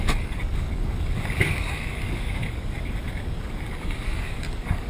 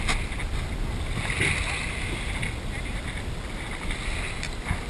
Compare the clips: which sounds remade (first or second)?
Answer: first